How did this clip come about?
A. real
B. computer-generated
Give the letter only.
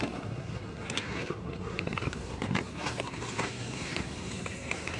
B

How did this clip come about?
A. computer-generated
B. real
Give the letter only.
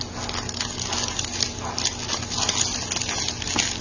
B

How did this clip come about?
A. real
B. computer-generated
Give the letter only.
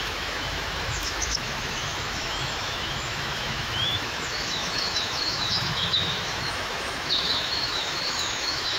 B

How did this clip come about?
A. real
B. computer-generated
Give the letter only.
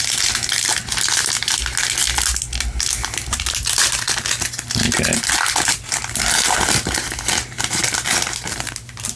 A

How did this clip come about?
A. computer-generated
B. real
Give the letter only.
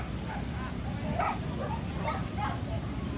B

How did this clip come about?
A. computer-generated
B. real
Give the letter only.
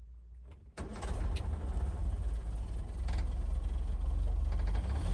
B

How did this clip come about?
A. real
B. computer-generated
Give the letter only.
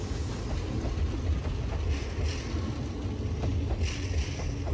A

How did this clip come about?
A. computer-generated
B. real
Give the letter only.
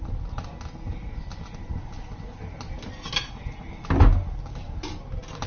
B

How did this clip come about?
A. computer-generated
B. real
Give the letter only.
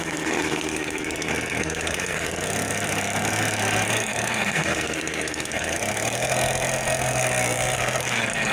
A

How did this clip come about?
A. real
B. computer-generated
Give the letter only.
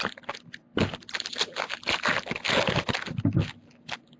A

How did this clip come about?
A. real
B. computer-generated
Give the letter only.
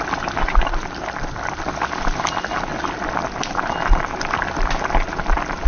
A